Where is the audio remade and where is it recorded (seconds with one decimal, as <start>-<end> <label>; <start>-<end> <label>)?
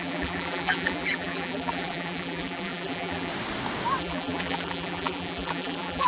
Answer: 0.0-3.3 remade; 3.3-4.0 recorded; 4.0-6.1 remade